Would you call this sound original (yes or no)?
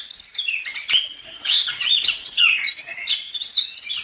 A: no